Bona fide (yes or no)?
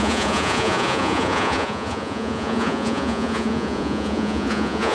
no